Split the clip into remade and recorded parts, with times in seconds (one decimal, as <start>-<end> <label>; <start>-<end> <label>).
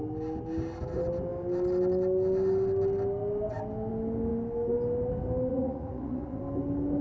0.0-5.5 recorded; 5.5-6.4 remade; 6.4-7.0 recorded